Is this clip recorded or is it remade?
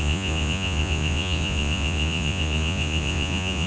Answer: remade